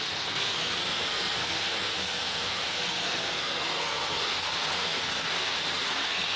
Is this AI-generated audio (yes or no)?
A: yes